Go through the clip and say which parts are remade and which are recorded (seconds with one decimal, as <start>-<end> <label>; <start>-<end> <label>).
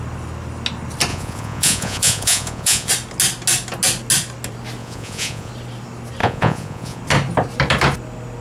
0.0-1.1 recorded; 1.1-2.9 remade; 2.9-4.8 recorded; 4.8-5.5 remade; 5.5-6.2 recorded; 6.2-7.0 remade; 7.0-8.4 recorded